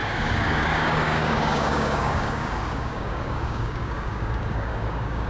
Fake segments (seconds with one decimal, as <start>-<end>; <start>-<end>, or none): 0.0-5.3